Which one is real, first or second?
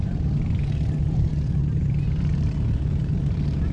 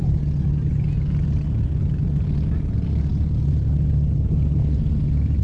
second